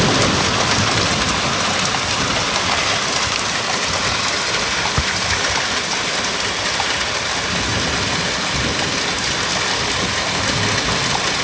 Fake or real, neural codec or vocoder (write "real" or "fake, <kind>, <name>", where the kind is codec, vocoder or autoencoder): real